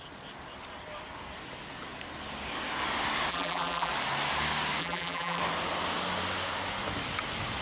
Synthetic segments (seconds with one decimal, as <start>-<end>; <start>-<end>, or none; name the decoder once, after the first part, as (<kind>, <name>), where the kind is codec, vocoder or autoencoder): 3.3-3.9 (vocoder, BigVGAN v2); 4.8-5.4